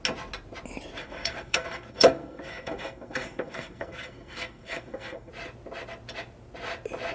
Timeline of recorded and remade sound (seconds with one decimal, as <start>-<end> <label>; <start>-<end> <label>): 0.0-1.0 recorded; 1.0-5.3 remade; 5.3-7.1 recorded